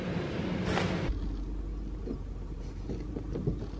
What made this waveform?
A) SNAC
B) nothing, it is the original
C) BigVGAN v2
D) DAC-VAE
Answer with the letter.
B